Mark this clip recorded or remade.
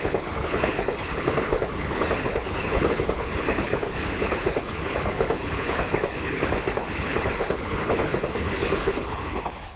remade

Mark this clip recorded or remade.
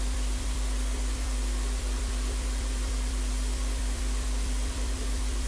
remade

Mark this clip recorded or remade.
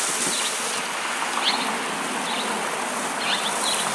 recorded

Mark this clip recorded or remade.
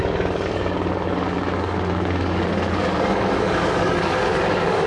remade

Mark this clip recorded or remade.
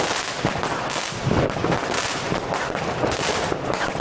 recorded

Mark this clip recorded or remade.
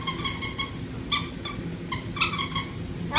recorded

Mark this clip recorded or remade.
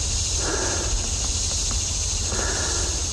recorded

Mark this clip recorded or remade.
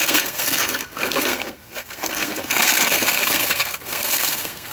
remade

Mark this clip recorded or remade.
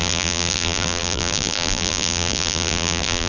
remade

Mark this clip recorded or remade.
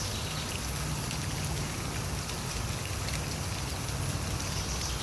recorded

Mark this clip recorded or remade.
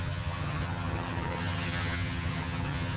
remade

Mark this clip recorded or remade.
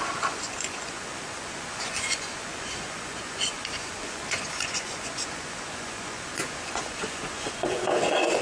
remade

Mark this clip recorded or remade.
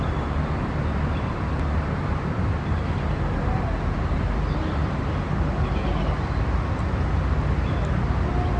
recorded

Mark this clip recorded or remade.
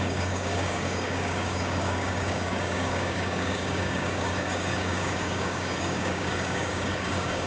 remade